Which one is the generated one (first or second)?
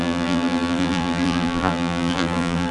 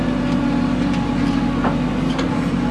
first